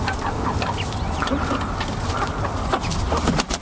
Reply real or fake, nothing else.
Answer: real